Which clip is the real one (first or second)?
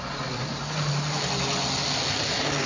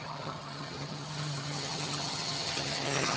first